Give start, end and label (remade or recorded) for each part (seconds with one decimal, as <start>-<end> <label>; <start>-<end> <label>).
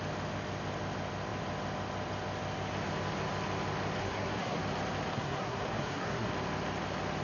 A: 0.0-4.0 recorded; 4.0-4.6 remade; 4.6-5.1 recorded; 5.1-6.3 remade; 6.3-7.2 recorded